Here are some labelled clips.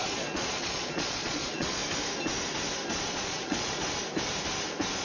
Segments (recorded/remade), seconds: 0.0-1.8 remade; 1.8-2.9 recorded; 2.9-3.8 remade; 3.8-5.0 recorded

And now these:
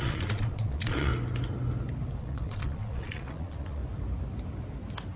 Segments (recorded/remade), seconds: 0.0-1.1 remade; 1.1-2.2 recorded; 2.2-3.8 remade; 3.8-5.2 recorded

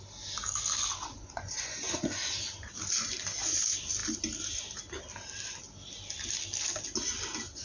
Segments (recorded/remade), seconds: 0.0-1.0 recorded; 1.0-1.9 remade; 1.9-7.6 recorded

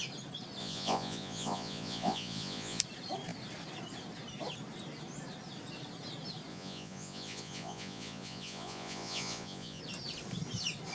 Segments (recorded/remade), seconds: 0.0-0.6 recorded; 0.6-2.8 remade; 2.8-6.5 recorded; 6.5-9.8 remade; 9.8-10.9 recorded

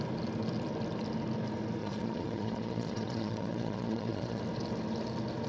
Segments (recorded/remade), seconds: 0.0-1.8 recorded; 1.8-4.4 remade; 4.4-5.5 recorded

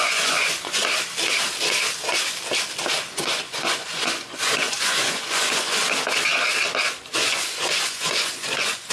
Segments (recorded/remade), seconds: 0.0-0.8 remade; 0.8-3.1 recorded; 3.1-5.8 remade; 5.8-7.0 recorded; 7.0-8.9 remade

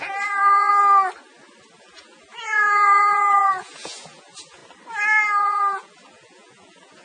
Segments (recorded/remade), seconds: 0.0-0.7 remade; 0.7-1.8 recorded; 1.8-4.6 remade; 4.6-5.4 recorded; 5.4-7.0 remade

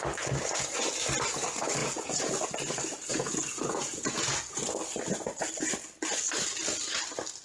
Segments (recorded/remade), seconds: 0.0-1.8 recorded; 1.8-2.3 remade; 2.3-3.1 recorded; 3.1-4.6 remade; 4.6-7.4 recorded